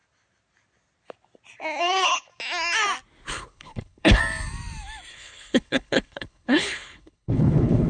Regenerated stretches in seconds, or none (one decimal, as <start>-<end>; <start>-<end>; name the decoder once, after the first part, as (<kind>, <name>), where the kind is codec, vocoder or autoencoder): 1.8-2.3 (codec, HILCodec); 3.3-4.2; 5.1-7.9